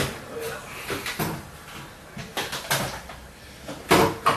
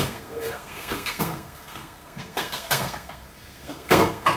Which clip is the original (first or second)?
first